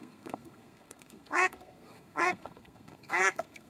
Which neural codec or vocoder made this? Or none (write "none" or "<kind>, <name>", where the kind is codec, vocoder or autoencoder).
codec, SNAC